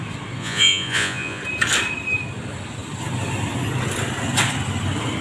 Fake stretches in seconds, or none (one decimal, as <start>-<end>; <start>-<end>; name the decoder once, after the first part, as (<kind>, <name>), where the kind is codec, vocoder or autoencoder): 0.4-1.4 (vocoder, Vocos)